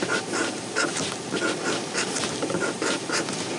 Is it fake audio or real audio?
real